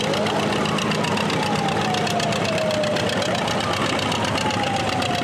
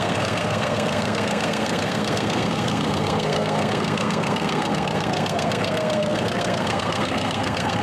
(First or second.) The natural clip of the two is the first